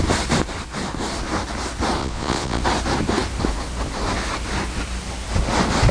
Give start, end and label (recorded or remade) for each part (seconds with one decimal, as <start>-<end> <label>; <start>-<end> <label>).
0.0-2.0 recorded; 2.0-2.6 remade; 2.6-5.9 recorded